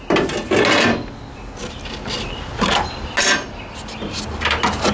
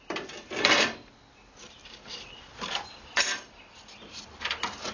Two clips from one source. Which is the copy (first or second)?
second